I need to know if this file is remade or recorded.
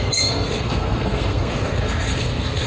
remade